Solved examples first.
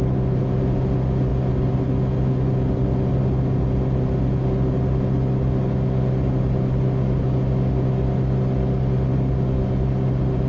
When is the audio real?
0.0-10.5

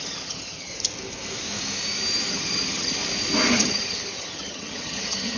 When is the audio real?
0.7-2.3; 3.0-3.5